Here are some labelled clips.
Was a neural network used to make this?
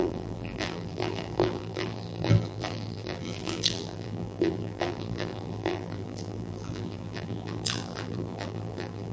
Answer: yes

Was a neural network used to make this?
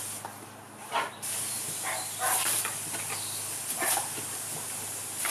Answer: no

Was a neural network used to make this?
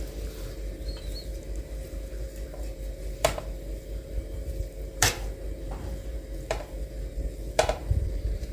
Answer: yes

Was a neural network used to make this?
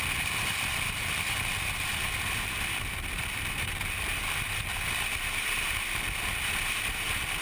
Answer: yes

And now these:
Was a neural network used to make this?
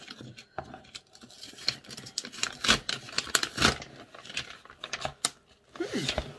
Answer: no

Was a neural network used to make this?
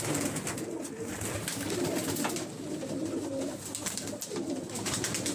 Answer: no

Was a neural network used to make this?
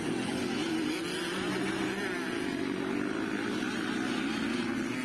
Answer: no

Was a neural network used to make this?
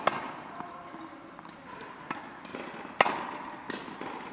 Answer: no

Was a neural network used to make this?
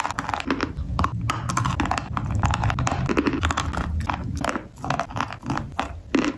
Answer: no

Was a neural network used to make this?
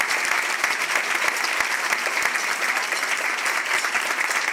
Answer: no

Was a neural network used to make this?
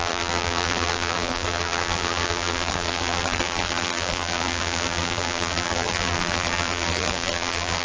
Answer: yes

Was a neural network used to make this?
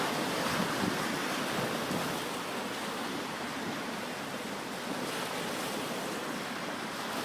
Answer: no